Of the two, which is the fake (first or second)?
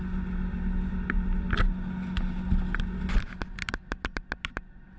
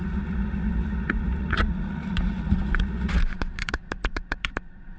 second